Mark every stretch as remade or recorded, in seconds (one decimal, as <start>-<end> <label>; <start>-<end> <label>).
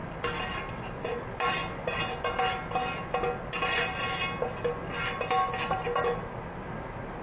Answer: 0.0-7.2 recorded